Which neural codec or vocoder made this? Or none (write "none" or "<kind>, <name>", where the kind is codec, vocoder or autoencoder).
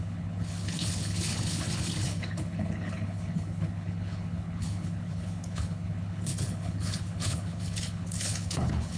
codec, HILCodec